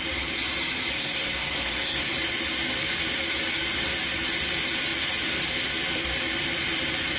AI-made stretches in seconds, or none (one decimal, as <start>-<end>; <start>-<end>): 0.9-2.1